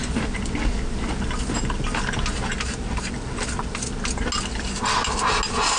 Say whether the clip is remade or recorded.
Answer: recorded